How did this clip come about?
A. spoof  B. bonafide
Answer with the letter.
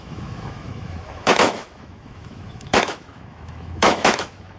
A